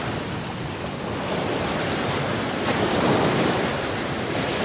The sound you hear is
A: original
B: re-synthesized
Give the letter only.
A